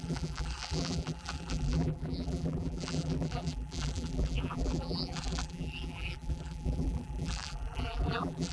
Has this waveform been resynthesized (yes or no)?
yes